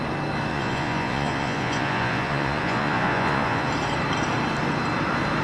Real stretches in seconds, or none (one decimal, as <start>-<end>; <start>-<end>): 0.0-0.5; 3.7-5.4